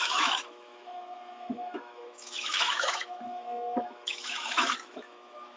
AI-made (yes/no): yes